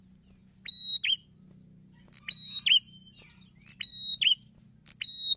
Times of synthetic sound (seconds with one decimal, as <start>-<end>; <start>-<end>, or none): none

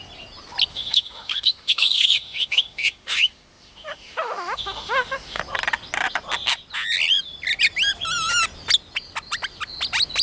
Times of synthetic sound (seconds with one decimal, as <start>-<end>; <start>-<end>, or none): 0.7-5.4

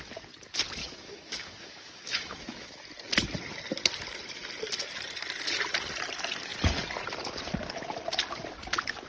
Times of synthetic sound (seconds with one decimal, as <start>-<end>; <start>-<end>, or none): 0.8-2.8

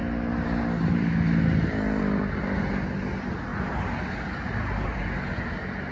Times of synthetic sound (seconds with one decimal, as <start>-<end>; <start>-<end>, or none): none

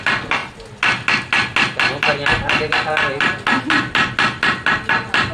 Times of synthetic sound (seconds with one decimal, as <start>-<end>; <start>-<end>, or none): none

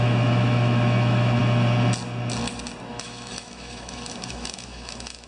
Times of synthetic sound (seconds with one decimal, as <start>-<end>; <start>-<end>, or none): 0.0-1.4; 2.9-5.3

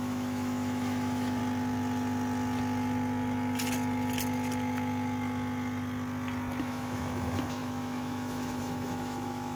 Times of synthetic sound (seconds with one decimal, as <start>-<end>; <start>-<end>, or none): 0.0-1.4; 6.6-9.6

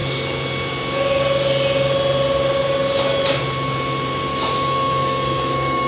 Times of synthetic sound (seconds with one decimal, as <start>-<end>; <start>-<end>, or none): 4.3-5.9